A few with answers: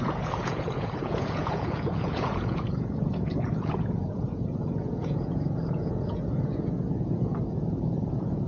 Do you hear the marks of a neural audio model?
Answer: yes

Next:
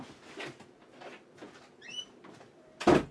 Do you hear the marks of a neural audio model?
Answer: no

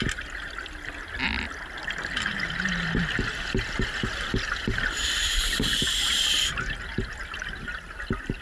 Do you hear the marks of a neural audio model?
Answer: no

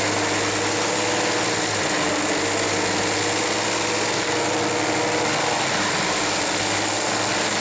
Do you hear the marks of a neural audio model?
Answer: no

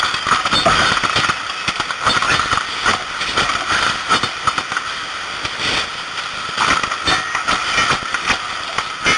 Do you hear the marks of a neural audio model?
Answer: no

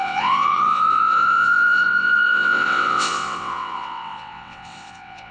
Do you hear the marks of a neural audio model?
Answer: yes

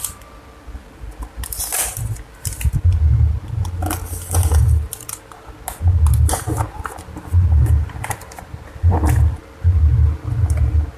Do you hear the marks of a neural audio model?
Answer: no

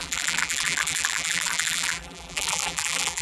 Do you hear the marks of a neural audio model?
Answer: yes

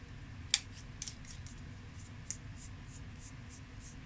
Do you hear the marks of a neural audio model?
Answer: no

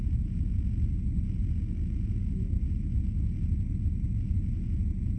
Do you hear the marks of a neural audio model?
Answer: no